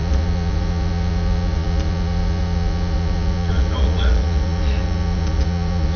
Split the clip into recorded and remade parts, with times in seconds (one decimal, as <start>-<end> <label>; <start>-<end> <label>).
0.0-6.0 remade